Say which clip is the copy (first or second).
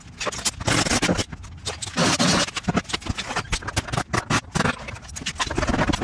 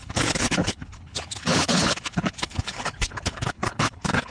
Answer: second